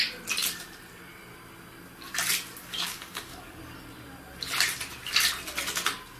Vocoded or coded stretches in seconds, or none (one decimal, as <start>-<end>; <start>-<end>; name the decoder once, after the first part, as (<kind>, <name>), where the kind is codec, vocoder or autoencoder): 2.6-3.6 (codec, DAC)